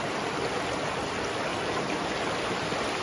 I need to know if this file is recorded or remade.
recorded